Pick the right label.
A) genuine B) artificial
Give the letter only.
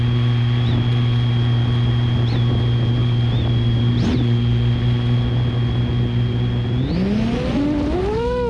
A